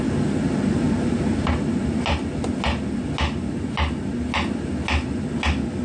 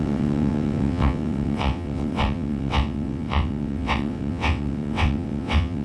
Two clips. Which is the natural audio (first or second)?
first